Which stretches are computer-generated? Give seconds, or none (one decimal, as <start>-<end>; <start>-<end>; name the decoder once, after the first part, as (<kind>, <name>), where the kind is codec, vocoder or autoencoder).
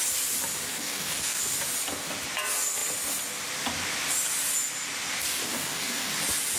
0.7-1.4 (codec, DAC); 5.4-6.1